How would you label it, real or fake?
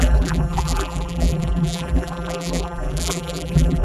fake